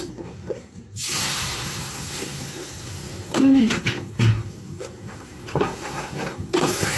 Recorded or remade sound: remade